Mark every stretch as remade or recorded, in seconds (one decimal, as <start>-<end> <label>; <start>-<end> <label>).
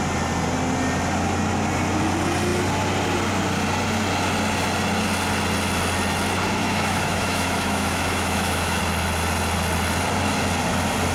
0.0-6.6 recorded; 6.6-8.8 remade; 8.8-11.1 recorded